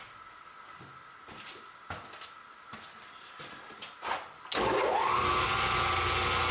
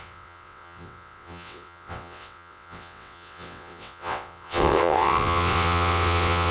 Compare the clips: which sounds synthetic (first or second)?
second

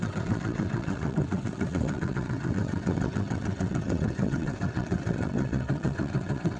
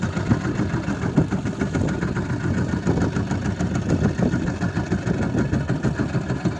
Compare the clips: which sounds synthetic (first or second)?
first